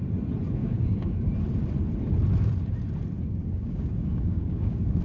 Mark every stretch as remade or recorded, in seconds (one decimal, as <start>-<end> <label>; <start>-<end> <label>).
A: 0.0-0.6 recorded; 0.6-1.3 remade; 1.3-3.4 recorded; 3.4-5.0 remade